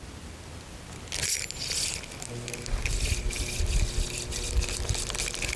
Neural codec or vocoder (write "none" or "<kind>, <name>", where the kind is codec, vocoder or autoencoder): none